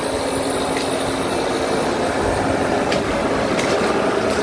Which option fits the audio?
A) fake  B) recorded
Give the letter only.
B